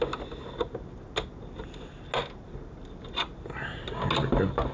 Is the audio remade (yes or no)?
no